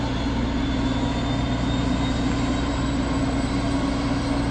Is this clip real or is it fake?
real